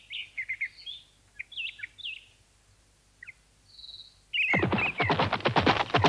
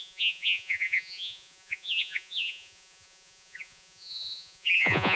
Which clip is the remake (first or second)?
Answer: second